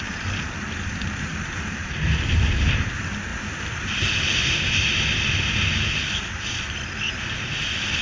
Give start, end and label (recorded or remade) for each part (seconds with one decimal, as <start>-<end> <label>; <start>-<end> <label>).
0.0-8.0 recorded